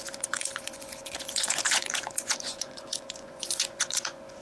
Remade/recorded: remade